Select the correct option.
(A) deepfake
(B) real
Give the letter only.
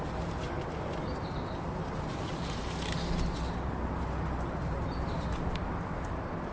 B